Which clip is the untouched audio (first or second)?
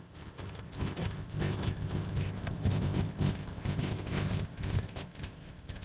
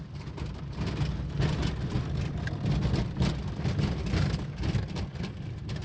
second